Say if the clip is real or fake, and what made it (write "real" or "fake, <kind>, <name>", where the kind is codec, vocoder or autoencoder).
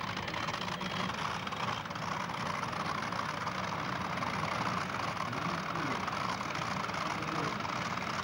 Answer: real